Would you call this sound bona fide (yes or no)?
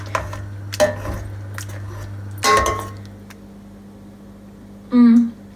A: yes